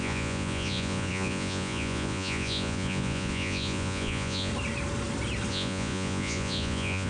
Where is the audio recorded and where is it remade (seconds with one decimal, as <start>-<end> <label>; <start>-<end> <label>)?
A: 0.0-4.5 remade; 4.5-5.5 recorded; 5.5-7.1 remade